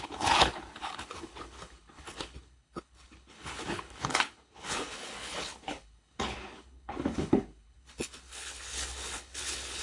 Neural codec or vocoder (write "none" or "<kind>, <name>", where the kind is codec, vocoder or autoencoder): codec, HILCodec